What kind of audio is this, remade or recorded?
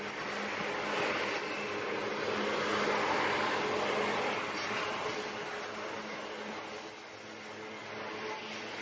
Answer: recorded